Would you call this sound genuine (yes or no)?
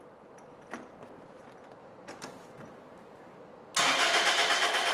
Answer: yes